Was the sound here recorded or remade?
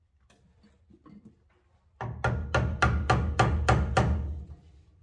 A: recorded